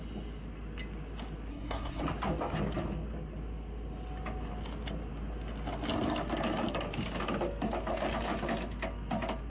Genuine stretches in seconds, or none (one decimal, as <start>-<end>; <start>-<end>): 0.0-1.5; 2.0-9.5